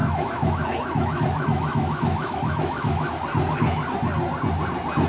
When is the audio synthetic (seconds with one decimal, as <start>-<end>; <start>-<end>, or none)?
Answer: 0.0-3.1